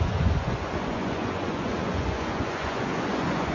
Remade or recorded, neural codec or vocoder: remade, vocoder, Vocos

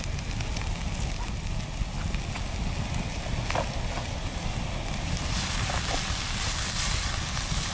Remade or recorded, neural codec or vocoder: recorded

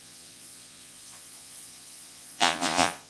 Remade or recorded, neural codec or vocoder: remade, vocoder, Vocos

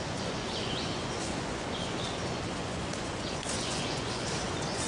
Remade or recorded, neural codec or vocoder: remade, vocoder, Vocos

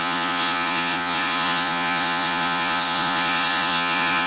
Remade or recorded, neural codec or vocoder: remade, vocoder, Vocos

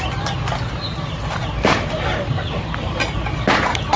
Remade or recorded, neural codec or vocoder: recorded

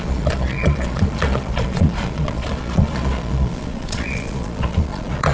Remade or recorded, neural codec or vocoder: remade, vocoder, Vocos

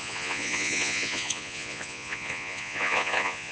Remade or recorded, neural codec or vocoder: remade, vocoder, Vocos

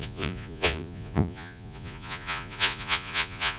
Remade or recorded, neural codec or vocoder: remade, vocoder, Vocos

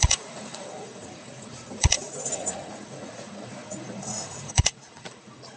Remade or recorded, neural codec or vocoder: remade, vocoder, Vocos